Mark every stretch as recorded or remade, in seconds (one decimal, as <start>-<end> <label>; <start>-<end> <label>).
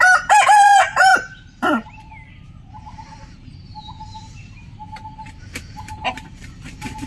0.0-7.1 remade